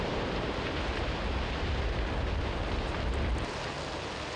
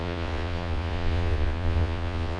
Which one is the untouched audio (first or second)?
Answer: first